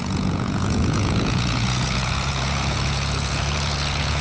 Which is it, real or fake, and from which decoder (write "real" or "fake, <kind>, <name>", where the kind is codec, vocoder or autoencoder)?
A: fake, vocoder, Vocos